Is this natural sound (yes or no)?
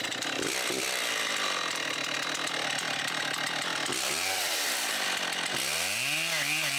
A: yes